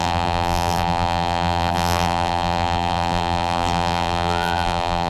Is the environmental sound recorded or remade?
remade